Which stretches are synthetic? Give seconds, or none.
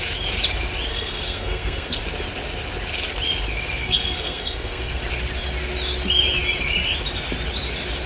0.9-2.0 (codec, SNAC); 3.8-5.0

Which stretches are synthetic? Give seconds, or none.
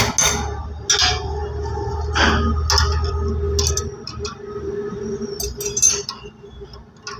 none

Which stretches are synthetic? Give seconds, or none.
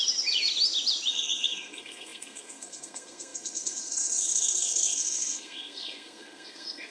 1.1-6.9 (codec, SNAC)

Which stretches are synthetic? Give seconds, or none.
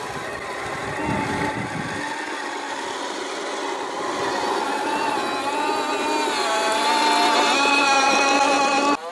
none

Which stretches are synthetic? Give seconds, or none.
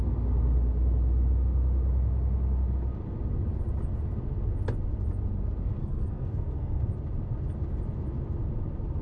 5.8-6.8 (codec, SNAC)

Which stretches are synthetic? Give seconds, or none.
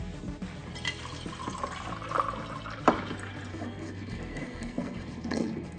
3.5-5.8 (codec, SNAC)